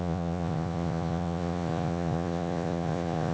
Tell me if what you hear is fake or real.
fake